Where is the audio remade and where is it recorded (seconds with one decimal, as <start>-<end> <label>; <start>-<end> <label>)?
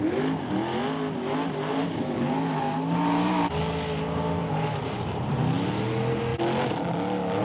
0.0-1.7 recorded; 1.7-3.5 remade; 3.5-4.4 recorded; 4.4-5.4 remade; 5.4-7.4 recorded